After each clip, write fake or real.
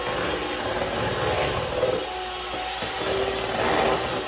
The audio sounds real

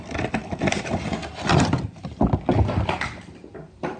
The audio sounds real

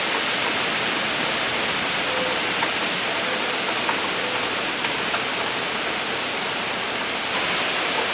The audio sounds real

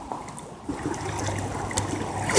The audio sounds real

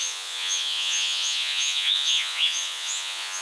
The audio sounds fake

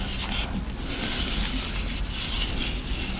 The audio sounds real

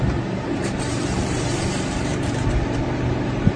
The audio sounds fake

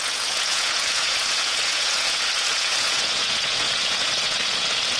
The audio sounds fake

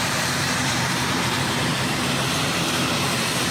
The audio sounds fake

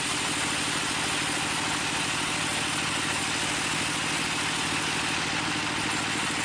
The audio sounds real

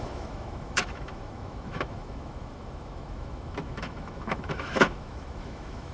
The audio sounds fake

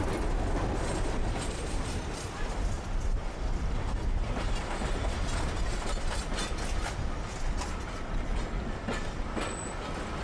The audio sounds real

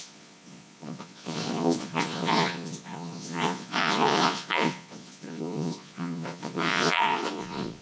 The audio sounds fake